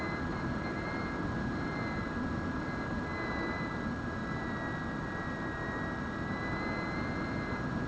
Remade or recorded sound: recorded